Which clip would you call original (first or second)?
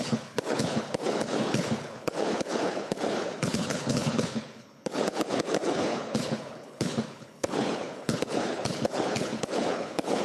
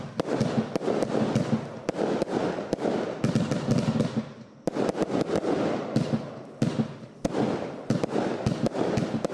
second